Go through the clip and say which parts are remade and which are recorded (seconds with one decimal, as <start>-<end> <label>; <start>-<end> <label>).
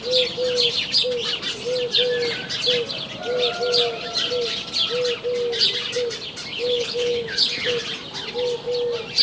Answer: 0.0-6.5 recorded; 6.5-7.8 remade; 7.8-9.2 recorded